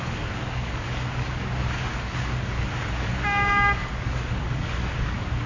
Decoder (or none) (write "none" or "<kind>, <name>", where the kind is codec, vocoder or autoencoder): codec, DAC